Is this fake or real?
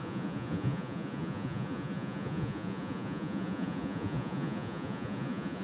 fake